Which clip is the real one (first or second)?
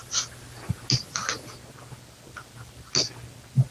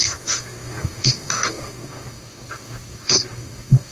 first